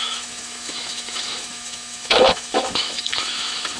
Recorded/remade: remade